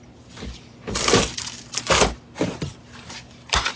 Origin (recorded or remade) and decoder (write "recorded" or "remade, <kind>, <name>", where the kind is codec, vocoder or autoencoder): recorded